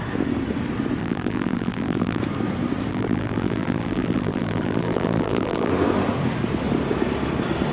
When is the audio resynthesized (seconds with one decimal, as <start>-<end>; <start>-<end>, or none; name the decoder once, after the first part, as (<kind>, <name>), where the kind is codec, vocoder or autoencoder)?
1.0-2.2 (vocoder, BigVGAN v2); 2.9-5.7